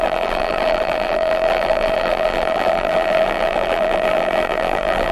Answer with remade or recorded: remade